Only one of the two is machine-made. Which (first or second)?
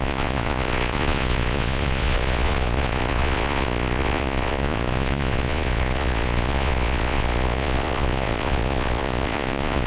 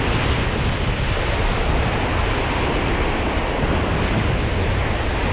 first